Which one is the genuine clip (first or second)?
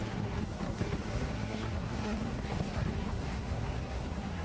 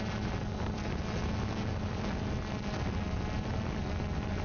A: second